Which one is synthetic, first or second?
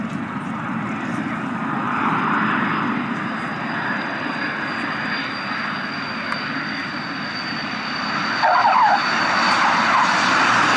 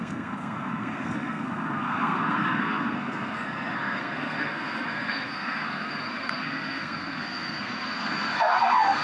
second